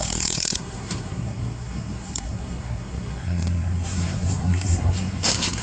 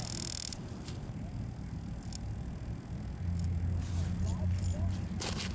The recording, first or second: second